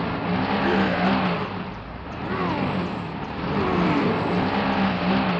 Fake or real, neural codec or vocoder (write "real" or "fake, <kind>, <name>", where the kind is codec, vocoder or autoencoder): real